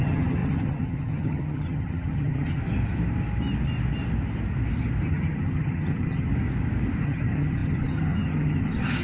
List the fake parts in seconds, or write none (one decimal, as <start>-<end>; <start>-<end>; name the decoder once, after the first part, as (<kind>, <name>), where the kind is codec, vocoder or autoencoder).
0.0-2.6 (vocoder, HiFi-GAN); 5.1-6.3; 7.0-9.0